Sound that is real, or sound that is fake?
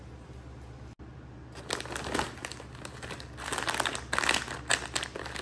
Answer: real